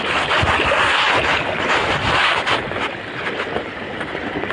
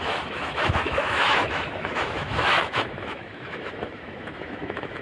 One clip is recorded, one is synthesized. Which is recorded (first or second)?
first